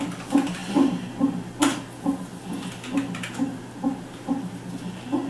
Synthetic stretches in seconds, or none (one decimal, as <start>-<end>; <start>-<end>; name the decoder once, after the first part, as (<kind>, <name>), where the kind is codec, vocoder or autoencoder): none